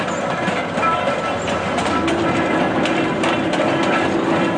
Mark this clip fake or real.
real